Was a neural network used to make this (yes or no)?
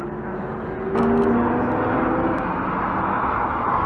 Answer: no